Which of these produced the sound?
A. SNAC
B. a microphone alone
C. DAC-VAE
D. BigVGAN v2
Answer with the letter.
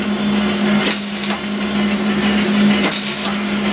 B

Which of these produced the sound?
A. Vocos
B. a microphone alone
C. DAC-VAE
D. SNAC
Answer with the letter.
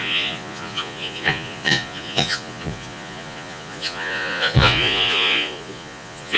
A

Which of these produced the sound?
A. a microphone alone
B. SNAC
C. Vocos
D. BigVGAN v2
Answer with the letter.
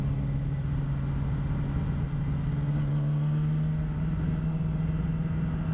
A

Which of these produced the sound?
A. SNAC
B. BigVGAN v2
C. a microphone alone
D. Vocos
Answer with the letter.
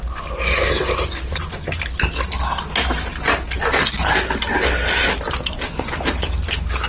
C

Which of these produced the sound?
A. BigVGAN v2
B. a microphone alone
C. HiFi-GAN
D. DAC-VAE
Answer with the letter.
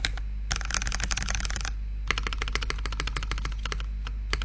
B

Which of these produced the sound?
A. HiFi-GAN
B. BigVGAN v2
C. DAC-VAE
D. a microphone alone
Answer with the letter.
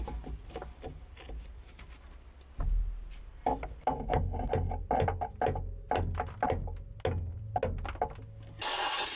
D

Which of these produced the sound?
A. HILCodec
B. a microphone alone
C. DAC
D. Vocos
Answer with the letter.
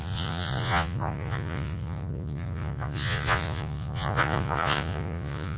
D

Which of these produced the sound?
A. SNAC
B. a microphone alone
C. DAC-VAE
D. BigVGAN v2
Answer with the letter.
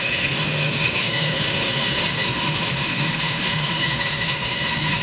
C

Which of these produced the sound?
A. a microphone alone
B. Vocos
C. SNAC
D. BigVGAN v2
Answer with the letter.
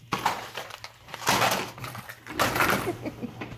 A